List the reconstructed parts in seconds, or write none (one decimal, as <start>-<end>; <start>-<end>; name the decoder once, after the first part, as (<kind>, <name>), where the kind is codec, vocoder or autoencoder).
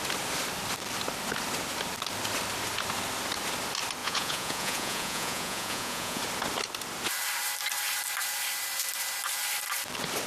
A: 4.0-6.2 (vocoder, Vocos)